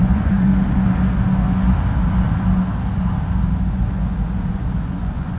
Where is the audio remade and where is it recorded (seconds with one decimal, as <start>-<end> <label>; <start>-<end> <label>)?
0.0-0.5 remade; 0.5-3.7 recorded; 3.7-5.4 remade